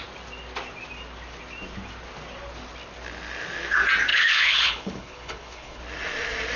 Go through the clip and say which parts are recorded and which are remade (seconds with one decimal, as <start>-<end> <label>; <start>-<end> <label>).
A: 0.0-4.1 recorded; 4.1-5.8 remade; 5.8-6.6 recorded